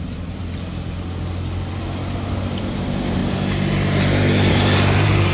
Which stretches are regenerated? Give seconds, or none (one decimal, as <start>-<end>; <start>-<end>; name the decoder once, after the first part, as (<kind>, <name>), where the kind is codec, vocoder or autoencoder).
0.0-0.4 (vocoder, BigVGAN v2); 2.6-3.2; 4.5-5.3